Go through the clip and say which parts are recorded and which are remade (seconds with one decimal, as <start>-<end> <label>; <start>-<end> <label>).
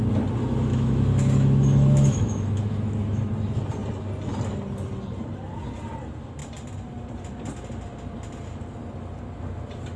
0.0-0.7 recorded; 0.7-3.3 remade; 3.3-10.0 recorded